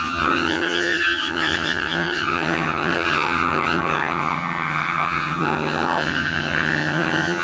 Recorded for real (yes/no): no